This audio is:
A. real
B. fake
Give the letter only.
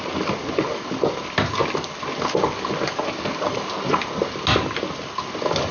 A